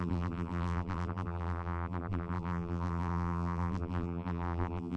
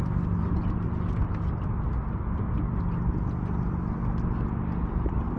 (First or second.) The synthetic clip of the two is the first